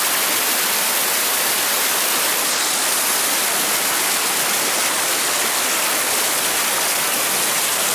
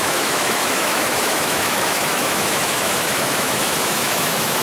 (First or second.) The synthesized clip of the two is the second